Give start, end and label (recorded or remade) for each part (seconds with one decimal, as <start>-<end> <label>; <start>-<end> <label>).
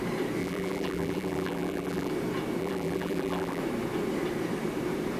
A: 0.0-0.4 recorded; 0.4-2.1 remade; 2.1-2.6 recorded; 2.6-3.6 remade; 3.6-5.2 recorded